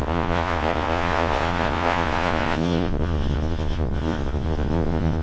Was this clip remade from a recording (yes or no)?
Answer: yes